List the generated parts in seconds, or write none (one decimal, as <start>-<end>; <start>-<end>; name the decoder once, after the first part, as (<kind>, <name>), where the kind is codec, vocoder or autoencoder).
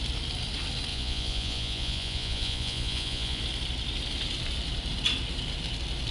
0.9-3.4 (vocoder, Vocos)